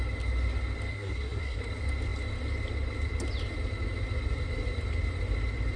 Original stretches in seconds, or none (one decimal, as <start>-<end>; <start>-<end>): 0.0-0.9; 1.6-5.8